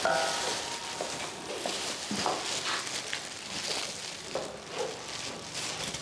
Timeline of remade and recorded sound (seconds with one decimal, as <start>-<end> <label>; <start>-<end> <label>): 0.0-6.0 recorded